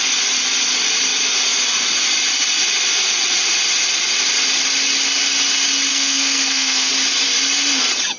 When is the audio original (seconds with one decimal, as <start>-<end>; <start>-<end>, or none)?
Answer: 0.0-5.9; 6.9-8.2